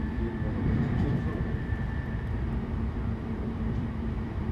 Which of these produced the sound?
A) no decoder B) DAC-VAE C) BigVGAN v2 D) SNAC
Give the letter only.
C